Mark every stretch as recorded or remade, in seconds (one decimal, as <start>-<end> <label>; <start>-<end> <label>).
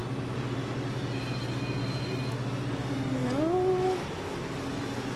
0.0-5.2 recorded